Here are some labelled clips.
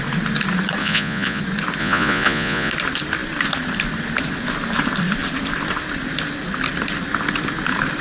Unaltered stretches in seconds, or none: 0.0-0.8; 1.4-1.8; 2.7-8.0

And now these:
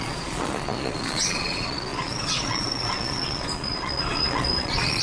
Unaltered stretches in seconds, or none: none

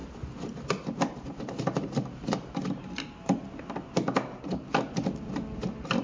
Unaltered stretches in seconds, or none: 0.0-6.0

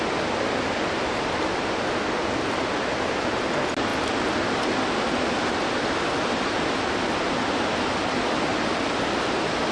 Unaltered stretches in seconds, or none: 0.0-9.7

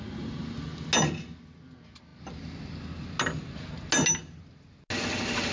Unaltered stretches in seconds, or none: 0.0-5.5

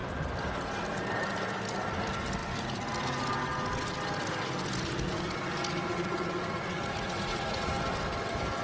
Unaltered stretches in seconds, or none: 0.0-5.8; 7.7-8.6